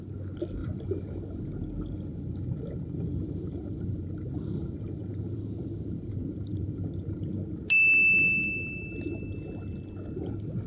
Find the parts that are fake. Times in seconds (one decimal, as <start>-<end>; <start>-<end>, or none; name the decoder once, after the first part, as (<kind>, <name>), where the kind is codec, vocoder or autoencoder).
0.6-1.2 (vocoder, BigVGAN v2); 2.1-7.2